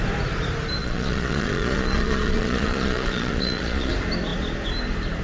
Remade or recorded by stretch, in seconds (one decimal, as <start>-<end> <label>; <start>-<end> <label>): 0.0-0.8 recorded; 0.8-3.9 remade; 3.9-5.2 recorded